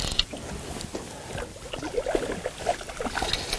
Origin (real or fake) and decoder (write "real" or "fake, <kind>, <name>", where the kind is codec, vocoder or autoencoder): real